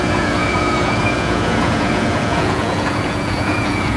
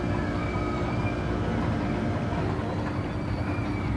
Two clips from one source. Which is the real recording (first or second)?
second